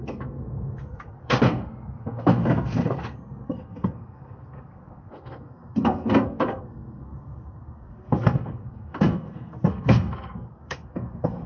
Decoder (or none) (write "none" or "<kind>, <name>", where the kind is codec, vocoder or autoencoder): codec, SNAC